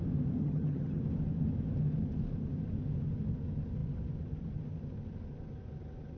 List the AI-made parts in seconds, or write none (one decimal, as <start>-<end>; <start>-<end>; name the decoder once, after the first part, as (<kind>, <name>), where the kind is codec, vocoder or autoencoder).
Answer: 0.4-1.0 (vocoder, HiFi-GAN)

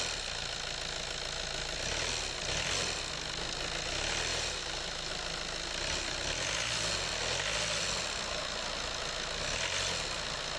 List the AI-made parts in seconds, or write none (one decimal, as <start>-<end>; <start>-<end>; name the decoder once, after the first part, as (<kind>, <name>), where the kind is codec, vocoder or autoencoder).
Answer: 4.3-5.1 (vocoder, BigVGAN v2)

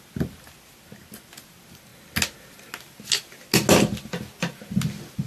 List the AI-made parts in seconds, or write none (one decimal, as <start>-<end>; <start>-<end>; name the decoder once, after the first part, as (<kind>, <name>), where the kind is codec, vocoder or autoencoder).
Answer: none